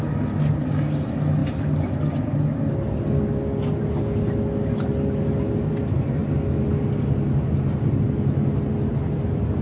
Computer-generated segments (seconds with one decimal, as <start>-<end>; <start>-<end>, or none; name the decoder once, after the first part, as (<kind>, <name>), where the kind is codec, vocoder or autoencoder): none